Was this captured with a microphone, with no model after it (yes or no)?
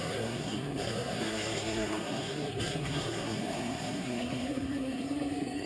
no